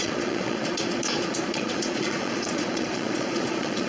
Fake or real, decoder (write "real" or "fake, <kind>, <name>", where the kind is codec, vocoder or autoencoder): fake, vocoder, Vocos